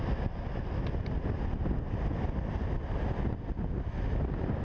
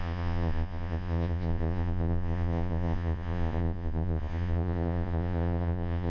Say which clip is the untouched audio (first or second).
first